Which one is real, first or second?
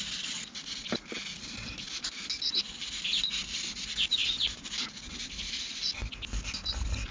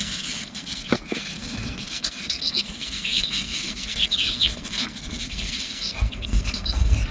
first